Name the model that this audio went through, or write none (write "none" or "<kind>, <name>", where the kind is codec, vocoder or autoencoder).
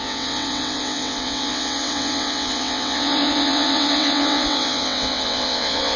vocoder, WaveNeXt